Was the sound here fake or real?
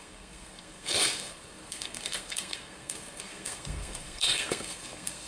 fake